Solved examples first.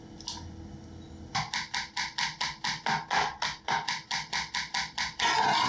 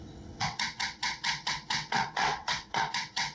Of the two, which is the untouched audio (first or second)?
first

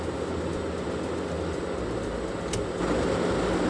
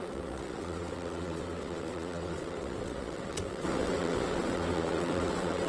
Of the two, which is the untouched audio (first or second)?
first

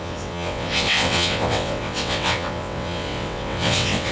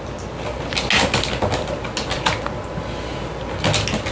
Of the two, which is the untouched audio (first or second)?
second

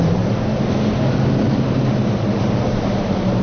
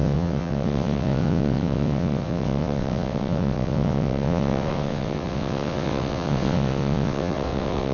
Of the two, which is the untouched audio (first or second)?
first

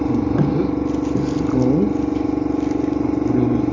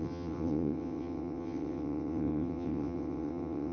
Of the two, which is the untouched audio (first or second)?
first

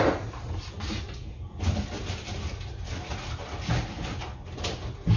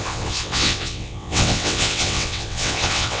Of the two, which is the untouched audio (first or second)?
first